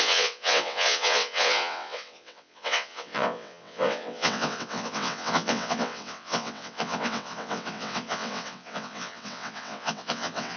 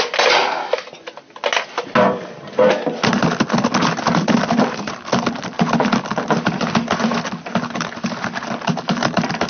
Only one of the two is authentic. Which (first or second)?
second